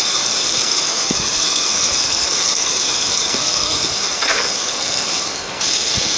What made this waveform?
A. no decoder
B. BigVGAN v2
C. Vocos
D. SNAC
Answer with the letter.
D